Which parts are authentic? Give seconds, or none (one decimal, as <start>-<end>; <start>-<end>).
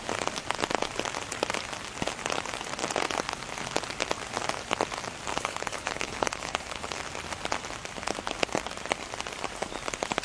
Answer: 0.0-5.3; 7.0-10.2